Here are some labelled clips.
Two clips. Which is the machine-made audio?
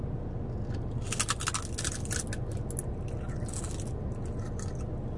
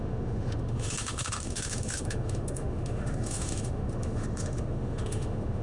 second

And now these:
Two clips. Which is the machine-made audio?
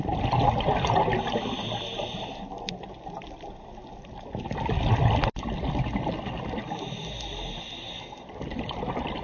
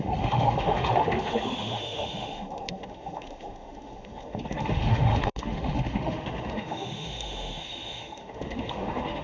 second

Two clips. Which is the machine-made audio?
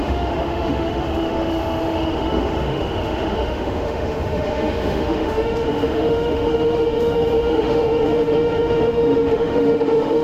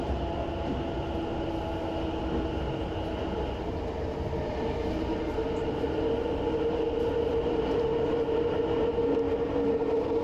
first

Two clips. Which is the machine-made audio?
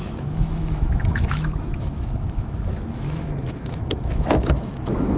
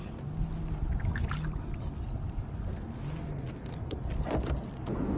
first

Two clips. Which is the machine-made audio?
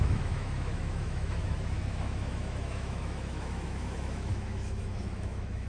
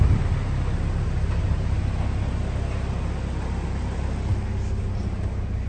first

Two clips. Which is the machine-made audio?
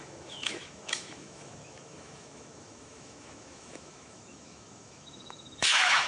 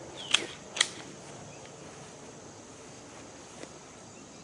first